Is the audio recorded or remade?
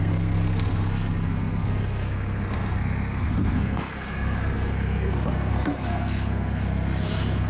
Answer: remade